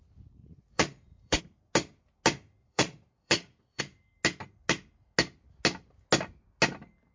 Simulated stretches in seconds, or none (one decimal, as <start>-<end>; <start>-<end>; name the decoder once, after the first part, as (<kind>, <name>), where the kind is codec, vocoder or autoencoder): 0.4-1.4 (vocoder, Vocos); 2.6-3.8